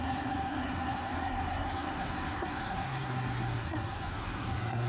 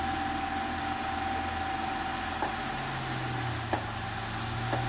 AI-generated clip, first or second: first